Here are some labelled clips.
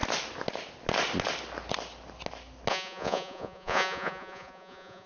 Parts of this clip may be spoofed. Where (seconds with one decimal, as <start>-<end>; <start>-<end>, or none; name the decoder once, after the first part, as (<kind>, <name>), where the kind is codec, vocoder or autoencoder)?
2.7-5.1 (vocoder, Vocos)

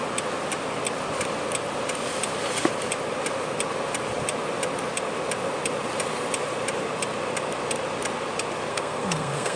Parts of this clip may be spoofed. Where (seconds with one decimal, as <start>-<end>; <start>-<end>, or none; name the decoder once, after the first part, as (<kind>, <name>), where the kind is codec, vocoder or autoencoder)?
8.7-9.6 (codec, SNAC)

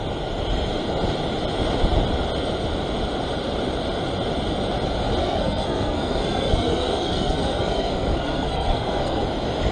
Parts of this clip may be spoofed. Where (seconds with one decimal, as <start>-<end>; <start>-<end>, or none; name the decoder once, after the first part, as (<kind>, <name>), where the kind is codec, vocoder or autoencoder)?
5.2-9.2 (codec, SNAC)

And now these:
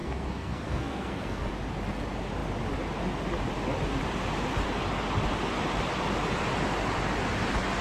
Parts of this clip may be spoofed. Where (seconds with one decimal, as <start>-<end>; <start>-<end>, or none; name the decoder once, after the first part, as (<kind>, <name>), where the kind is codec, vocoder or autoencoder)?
0.0-1.5 (codec, SNAC)

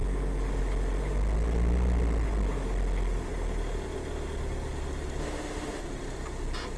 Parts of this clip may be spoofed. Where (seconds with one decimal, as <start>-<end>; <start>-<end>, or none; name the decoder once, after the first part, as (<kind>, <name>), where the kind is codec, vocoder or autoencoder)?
5.2-5.8 (autoencoder, DAC-VAE)

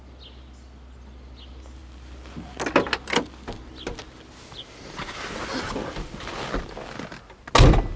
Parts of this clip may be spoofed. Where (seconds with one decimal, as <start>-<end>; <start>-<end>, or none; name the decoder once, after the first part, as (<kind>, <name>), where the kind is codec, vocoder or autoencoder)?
none

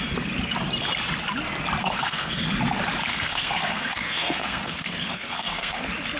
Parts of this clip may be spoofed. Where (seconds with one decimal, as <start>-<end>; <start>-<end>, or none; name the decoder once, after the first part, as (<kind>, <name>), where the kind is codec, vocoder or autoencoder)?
1.8-2.4 (codec, SNAC); 3.1-5.8